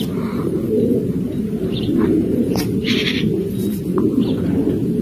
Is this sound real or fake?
fake